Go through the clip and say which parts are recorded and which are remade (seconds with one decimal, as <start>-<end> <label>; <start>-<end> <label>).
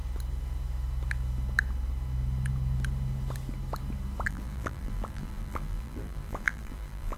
0.0-4.3 recorded; 4.3-7.2 remade